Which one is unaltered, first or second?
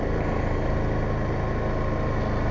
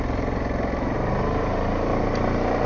first